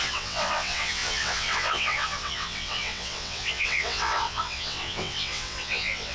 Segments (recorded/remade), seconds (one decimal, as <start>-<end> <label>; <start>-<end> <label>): 0.0-6.1 remade